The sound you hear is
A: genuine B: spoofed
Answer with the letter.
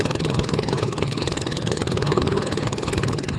B